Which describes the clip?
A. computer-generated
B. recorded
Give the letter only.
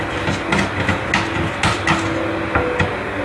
B